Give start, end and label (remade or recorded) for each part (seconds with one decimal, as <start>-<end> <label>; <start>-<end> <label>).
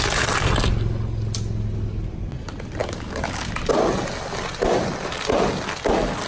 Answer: 0.0-2.8 recorded; 2.8-3.5 remade; 3.5-6.3 recorded